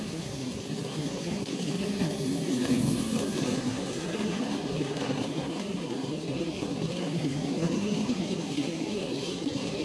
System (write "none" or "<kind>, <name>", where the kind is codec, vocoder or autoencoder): codec, SNAC